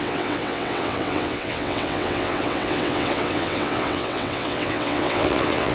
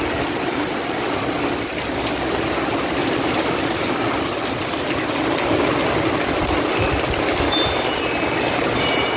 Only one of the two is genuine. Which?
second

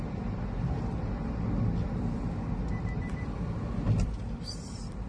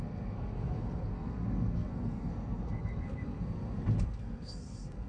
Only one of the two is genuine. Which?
first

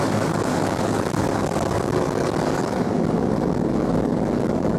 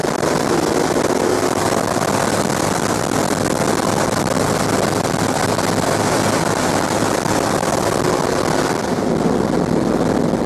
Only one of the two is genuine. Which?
second